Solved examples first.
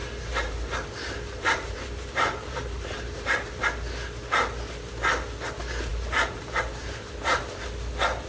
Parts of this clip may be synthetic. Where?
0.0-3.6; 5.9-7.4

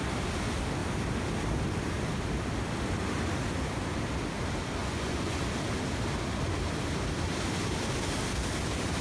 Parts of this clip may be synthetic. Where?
4.8-5.4

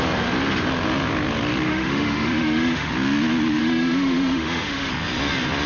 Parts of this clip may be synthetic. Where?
1.7-2.9; 3.6-4.9

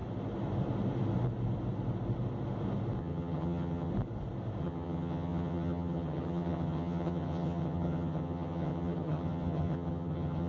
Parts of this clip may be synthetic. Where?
3.0-3.9; 4.6-10.5

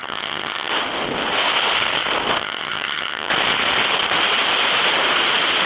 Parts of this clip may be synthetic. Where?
0.0-0.7; 2.4-3.3

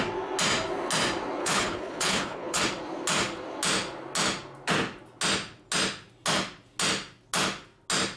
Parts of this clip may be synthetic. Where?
1.4-2.6

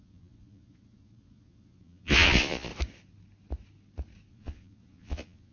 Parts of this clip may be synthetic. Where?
0.0-2.7; 4.3-5.5